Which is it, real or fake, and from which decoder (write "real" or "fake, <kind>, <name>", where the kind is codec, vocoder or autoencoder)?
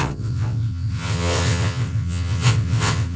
fake, vocoder, WaveNeXt